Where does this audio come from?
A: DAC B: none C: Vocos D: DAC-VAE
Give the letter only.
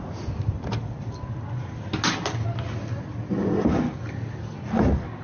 B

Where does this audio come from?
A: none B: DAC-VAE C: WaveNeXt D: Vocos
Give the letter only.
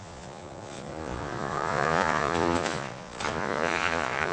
D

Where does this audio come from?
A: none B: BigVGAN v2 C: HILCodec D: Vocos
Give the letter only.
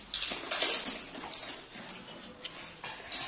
A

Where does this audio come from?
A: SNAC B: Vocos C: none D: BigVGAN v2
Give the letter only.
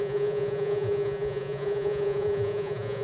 B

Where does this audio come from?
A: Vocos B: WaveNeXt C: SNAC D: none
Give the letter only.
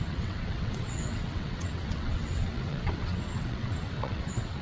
B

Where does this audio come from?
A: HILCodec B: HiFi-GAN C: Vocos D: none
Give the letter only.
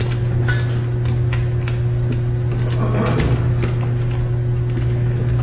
D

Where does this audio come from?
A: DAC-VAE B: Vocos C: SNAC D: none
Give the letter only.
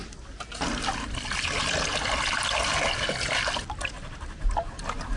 D